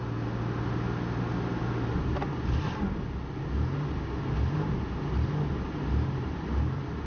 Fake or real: real